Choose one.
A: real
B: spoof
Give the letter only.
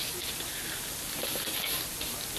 A